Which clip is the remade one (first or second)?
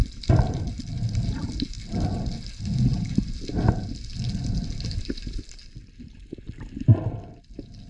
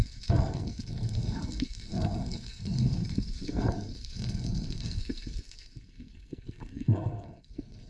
second